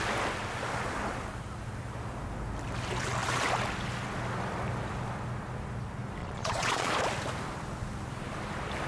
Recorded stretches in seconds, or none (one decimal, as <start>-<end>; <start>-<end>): 0.0-6.2; 6.9-8.9